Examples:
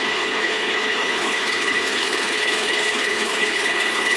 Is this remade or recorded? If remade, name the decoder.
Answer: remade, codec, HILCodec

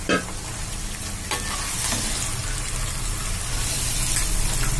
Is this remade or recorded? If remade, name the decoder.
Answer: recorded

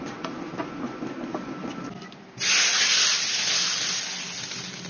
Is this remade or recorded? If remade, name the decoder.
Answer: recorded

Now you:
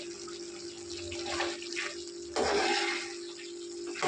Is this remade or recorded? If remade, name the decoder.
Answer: recorded